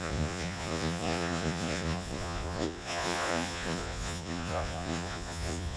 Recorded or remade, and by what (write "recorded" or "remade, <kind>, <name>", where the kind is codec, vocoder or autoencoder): remade, vocoder, Vocos